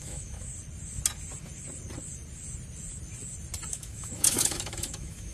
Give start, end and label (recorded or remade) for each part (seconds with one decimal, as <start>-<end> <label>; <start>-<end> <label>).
0.0-0.5 remade; 0.5-3.7 recorded; 3.7-5.3 remade

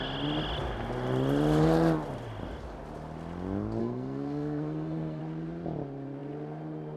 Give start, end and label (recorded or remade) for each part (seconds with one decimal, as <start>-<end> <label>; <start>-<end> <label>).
0.0-3.8 recorded; 3.8-5.2 remade; 5.2-7.0 recorded